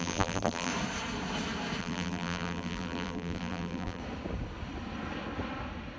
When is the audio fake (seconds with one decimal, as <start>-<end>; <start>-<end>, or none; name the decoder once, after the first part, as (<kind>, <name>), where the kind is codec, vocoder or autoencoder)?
0.0-0.7 (vocoder, BigVGAN v2); 1.8-4.0